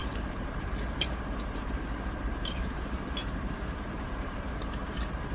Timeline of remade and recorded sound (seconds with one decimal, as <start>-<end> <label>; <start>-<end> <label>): 0.0-5.3 remade